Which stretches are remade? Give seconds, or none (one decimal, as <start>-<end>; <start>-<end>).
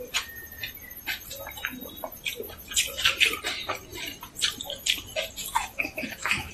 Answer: 5.4-6.5